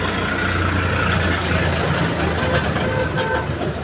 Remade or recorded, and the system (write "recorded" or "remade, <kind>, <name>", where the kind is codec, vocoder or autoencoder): recorded